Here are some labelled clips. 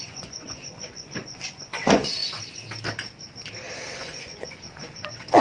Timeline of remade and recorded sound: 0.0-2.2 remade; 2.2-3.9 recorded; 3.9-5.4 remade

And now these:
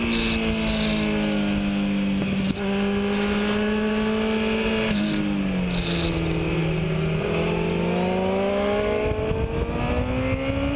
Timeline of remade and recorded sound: 0.0-10.8 recorded

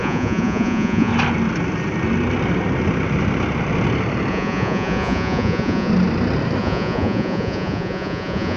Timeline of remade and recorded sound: 0.0-1.1 remade; 1.1-4.3 recorded; 4.3-5.9 remade; 5.9-6.6 recorded; 6.6-8.6 remade